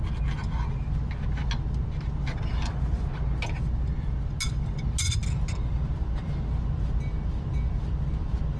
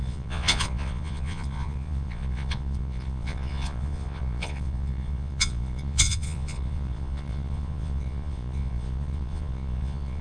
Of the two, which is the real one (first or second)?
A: first